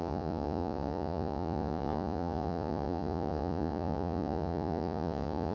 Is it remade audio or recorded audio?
remade